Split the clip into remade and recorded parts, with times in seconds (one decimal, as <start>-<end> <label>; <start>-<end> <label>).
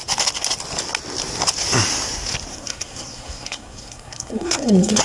0.0-2.5 recorded; 2.5-5.0 remade